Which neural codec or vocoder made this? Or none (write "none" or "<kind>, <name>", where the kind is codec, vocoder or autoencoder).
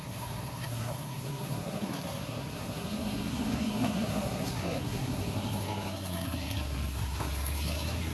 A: codec, SNAC